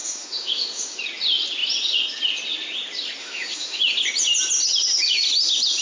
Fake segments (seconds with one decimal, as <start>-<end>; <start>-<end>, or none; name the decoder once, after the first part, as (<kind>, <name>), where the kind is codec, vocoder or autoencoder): 0.0-1.0 (autoencoder, DAC-VAE); 3.2-3.8